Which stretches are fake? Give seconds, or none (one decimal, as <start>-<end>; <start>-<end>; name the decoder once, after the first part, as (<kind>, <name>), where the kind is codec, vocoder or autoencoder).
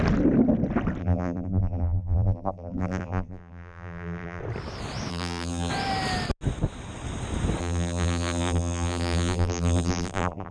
1.0-4.4 (vocoder, BigVGAN v2); 5.1-5.7; 7.6-10.5